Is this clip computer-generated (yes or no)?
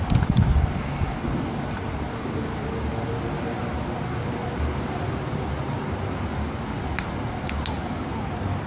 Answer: no